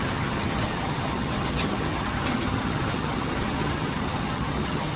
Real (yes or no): no